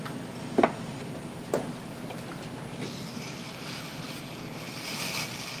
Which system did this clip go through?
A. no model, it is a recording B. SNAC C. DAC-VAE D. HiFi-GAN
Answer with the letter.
A